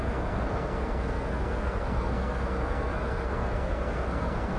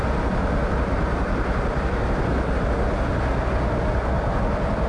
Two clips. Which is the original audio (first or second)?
second